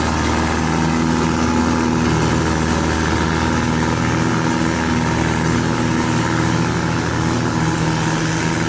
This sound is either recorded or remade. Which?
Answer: recorded